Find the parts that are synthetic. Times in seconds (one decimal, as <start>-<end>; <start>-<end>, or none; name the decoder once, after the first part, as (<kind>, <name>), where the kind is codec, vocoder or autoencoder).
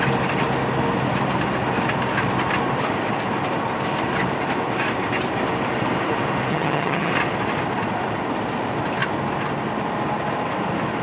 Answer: 6.5-7.1 (vocoder, HiFi-GAN)